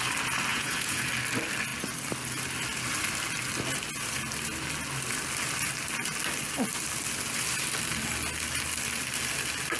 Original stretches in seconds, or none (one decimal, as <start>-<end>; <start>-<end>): 0.0-0.5; 1.1-9.8